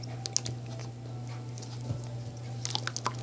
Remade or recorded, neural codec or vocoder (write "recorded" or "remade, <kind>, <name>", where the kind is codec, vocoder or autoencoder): recorded